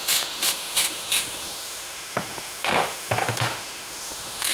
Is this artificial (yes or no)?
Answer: yes